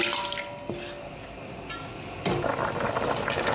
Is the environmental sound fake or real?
real